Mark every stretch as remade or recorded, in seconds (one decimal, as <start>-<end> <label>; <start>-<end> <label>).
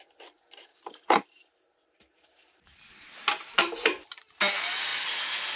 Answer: 0.0-0.7 recorded; 0.7-4.1 remade; 4.1-5.6 recorded